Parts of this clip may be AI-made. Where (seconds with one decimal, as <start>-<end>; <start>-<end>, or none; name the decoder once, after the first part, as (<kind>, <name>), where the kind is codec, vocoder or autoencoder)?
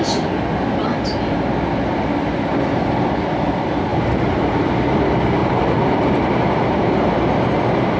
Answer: 3.9-4.7 (vocoder, BigVGAN v2); 5.4-7.1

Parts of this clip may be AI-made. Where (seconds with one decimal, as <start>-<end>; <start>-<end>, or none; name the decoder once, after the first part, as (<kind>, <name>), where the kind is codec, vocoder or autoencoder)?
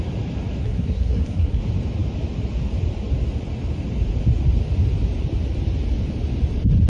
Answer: 0.6-1.6 (codec, SNAC)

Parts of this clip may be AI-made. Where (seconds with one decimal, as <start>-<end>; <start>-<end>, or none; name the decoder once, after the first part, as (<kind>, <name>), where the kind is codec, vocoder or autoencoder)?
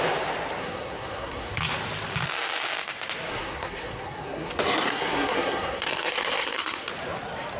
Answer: 0.6-1.6 (codec, SNAC); 3.3-6.9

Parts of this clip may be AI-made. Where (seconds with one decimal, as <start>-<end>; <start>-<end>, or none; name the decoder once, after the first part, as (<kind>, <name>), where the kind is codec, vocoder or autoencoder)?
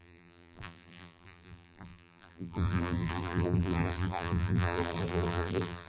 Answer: 0.0-5.9 (vocoder, BigVGAN v2)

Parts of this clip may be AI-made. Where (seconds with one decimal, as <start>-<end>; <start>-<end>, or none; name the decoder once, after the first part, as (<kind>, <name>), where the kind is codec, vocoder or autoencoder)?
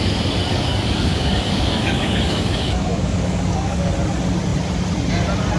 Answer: 0.5-3.9 (codec, DAC)